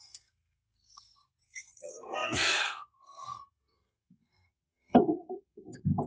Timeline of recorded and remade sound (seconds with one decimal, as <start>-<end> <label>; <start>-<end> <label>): 0.0-6.1 remade